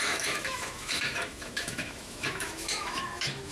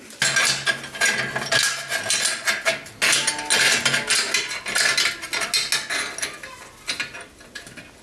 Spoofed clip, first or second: first